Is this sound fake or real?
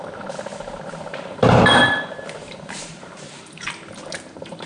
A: fake